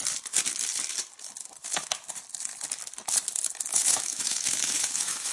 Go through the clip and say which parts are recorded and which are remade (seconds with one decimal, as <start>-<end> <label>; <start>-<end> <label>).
0.0-1.4 recorded; 1.4-2.1 remade; 2.1-3.7 recorded; 3.7-5.3 remade